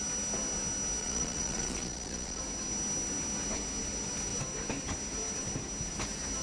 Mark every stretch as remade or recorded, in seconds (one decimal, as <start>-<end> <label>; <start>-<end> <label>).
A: 0.0-1.0 recorded; 1.0-2.4 remade; 2.4-6.4 recorded